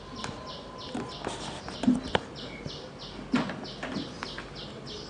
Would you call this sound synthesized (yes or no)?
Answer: no